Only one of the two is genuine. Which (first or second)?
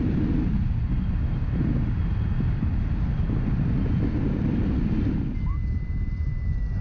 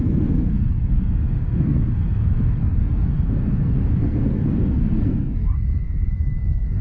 first